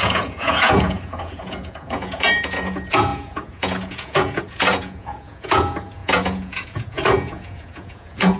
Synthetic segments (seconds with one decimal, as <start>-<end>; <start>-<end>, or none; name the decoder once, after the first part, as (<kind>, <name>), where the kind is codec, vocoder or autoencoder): 0.0-8.4 (vocoder, Vocos)